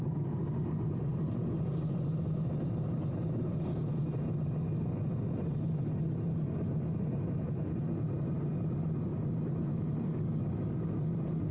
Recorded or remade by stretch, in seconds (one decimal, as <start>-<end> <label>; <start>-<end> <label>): 0.0-11.5 recorded